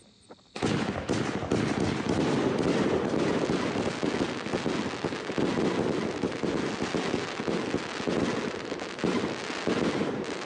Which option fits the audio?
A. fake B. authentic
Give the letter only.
B